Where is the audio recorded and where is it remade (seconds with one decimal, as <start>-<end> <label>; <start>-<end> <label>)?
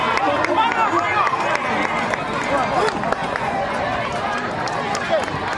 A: 0.0-3.2 recorded; 3.2-3.8 remade; 3.8-5.6 recorded